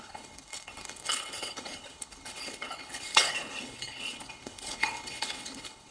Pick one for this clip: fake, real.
fake